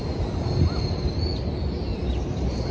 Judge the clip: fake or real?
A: real